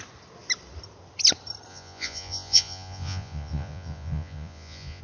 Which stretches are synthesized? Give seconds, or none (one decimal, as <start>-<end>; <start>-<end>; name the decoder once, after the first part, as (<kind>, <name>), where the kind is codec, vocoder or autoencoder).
1.7-5.0 (vocoder, Vocos)